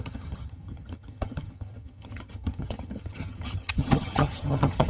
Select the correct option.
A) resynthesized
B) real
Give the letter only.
A